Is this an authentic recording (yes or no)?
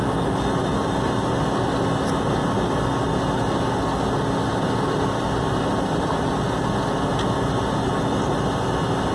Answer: yes